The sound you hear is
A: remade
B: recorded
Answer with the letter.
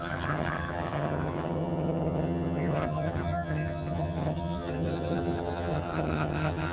A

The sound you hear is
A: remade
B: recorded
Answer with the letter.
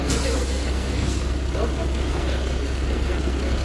A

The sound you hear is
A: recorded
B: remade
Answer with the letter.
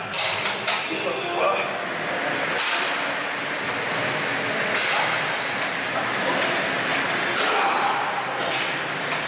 A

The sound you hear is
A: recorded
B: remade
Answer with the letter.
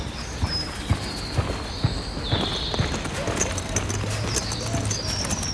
A